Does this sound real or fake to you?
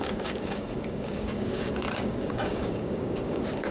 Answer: fake